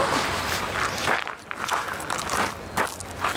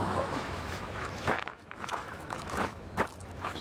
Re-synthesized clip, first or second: second